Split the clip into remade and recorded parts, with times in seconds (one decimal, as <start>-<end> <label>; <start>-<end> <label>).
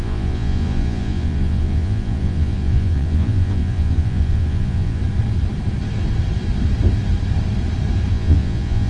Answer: 0.0-5.0 remade; 5.0-8.1 recorded; 8.1-8.9 remade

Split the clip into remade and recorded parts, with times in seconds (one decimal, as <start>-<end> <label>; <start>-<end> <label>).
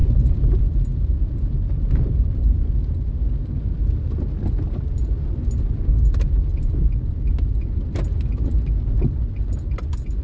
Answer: 0.0-3.1 remade; 3.1-6.5 recorded; 6.5-7.3 remade; 7.3-8.1 recorded; 8.1-10.2 remade